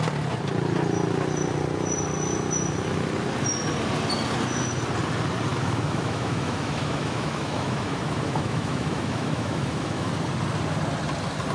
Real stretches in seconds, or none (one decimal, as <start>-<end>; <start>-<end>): 0.0-5.5; 10.1-11.5